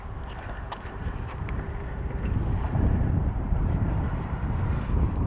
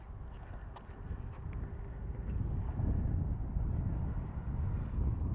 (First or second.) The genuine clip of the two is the second